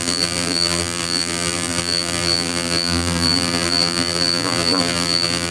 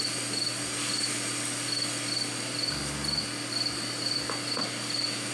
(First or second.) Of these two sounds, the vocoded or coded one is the first